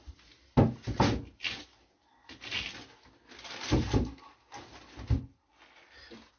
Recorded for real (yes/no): yes